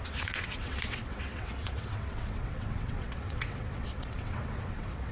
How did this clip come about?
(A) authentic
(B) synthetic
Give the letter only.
B